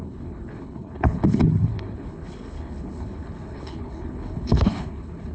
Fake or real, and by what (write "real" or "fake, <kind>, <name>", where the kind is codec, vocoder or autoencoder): fake, codec, HILCodec